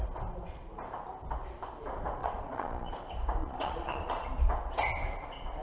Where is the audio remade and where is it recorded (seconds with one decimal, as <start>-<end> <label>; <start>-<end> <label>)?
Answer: 0.0-2.2 recorded; 2.2-2.9 remade; 2.9-3.4 recorded; 3.4-4.3 remade; 4.3-5.6 recorded